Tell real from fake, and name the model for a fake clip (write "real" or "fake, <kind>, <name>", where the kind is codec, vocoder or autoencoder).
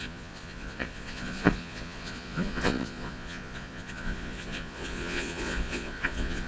fake, vocoder, Vocos